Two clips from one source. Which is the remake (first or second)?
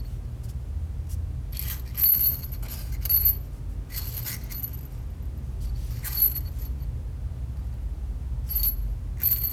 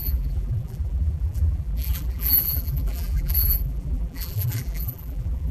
second